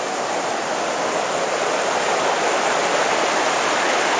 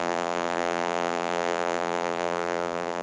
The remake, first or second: second